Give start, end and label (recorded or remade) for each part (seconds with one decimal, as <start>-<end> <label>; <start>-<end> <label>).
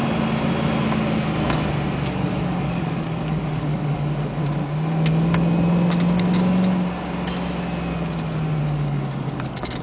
0.0-2.1 recorded; 2.1-4.4 remade; 4.4-8.6 recorded; 8.6-9.8 remade